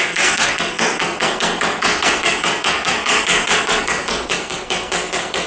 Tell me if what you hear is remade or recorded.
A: remade